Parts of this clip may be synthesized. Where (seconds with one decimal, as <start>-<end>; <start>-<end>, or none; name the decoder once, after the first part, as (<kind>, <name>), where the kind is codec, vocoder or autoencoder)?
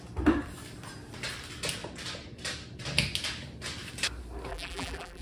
4.5-5.2 (vocoder, BigVGAN v2)